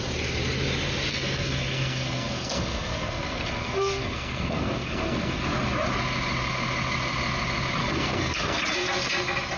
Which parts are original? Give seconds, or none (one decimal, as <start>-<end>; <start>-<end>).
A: 0.0-1.1; 5.4-7.8; 8.6-9.6